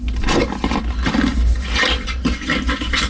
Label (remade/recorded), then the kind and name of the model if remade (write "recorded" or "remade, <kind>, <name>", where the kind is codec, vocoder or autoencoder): recorded